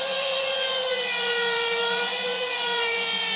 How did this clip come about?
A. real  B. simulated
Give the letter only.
B